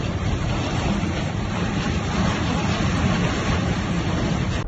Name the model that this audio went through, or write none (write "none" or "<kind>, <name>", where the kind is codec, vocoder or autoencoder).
vocoder, BigVGAN v2